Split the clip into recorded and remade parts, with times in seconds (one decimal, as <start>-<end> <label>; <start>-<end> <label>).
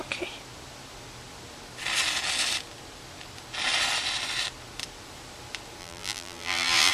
0.0-5.8 recorded; 5.8-6.9 remade